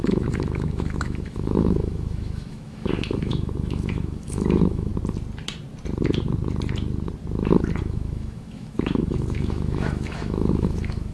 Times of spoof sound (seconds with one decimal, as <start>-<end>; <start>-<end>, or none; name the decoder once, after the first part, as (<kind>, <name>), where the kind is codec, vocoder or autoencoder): 0.0-4.9 (autoencoder, DAC-VAE); 7.8-11.1